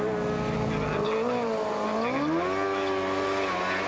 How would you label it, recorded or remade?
recorded